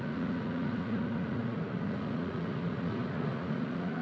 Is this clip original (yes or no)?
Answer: no